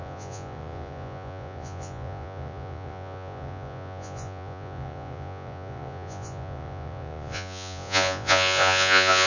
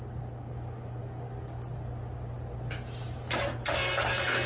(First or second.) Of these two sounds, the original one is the second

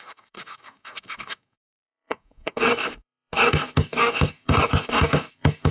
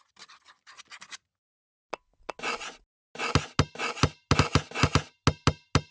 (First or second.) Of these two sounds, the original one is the second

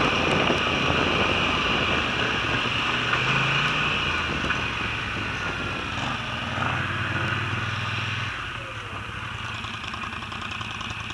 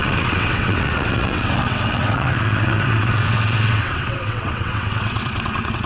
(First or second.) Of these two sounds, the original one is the first